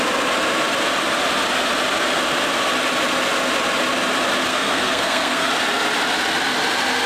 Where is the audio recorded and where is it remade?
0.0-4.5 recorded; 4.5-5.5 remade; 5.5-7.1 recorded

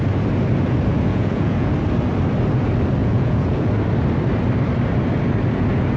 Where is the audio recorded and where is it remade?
0.0-1.1 recorded; 1.1-1.7 remade; 1.7-3.0 recorded; 3.0-3.7 remade; 3.7-6.0 recorded

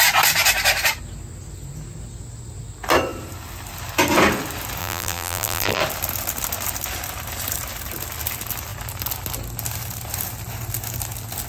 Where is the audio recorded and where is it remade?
0.0-4.8 recorded; 4.8-5.8 remade; 5.8-11.5 recorded

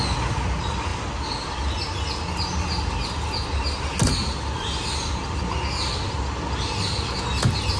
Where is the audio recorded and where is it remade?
0.0-7.8 recorded

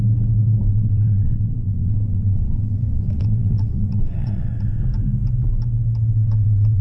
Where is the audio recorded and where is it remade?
0.0-0.7 recorded; 0.7-4.8 remade; 4.8-6.1 recorded; 6.1-6.8 remade